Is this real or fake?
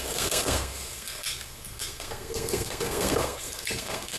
fake